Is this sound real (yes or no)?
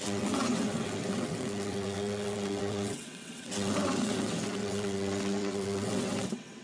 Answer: no